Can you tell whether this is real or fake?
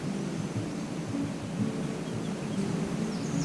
real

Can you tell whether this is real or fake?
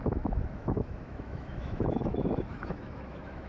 fake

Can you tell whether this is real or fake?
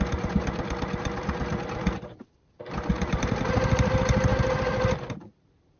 real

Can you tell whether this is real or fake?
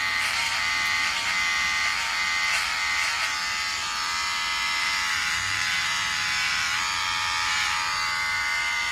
fake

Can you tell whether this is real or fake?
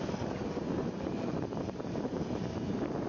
fake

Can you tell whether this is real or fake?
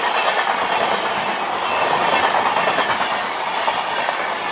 real